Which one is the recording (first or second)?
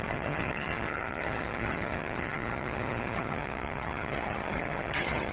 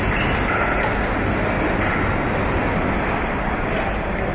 second